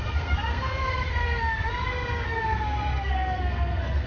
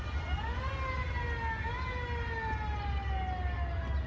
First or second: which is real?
second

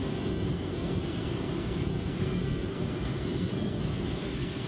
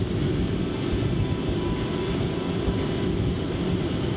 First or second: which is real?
second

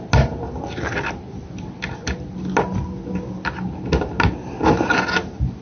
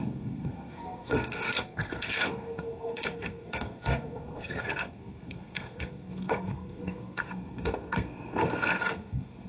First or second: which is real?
first